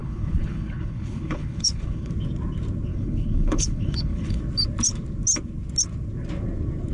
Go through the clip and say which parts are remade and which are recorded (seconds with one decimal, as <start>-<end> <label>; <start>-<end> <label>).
0.0-2.1 remade; 2.1-2.9 recorded; 2.9-4.4 remade; 4.4-6.9 recorded